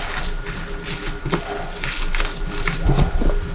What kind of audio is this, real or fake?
real